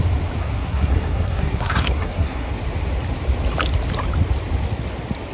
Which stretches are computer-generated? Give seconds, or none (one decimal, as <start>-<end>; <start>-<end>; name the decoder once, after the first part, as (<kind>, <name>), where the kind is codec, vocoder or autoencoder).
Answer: 0.4-2.5 (codec, SNAC)